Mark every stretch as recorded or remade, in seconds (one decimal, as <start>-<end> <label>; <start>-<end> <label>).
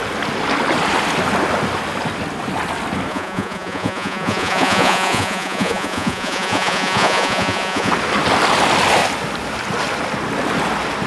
0.0-3.1 recorded; 3.1-7.9 remade; 7.9-11.1 recorded